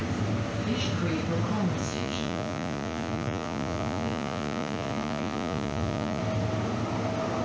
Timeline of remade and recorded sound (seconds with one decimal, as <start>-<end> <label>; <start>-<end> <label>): 0.0-1.8 recorded; 1.8-6.2 remade; 6.2-7.4 recorded